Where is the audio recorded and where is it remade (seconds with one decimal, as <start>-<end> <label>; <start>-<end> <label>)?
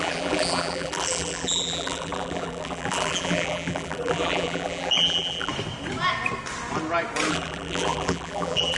0.0-5.5 remade; 5.5-7.3 recorded; 7.3-8.8 remade